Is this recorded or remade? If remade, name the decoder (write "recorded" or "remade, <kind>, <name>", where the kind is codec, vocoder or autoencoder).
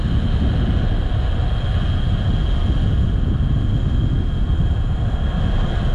recorded